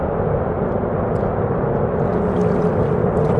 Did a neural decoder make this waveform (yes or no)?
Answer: no